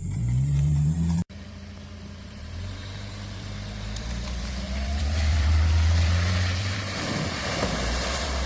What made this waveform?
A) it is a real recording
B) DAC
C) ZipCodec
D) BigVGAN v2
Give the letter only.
D